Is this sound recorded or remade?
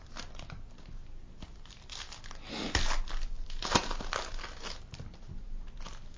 recorded